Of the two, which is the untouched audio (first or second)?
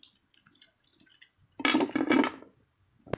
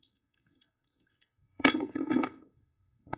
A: first